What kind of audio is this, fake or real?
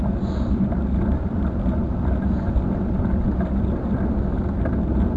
real